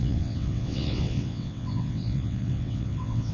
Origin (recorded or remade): remade